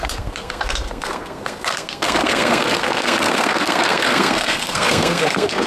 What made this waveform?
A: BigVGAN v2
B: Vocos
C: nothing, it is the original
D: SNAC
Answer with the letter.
D